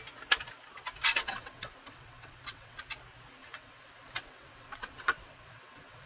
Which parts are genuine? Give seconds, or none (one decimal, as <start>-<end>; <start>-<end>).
0.0-1.1; 2.8-3.4